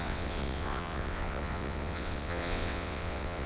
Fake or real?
fake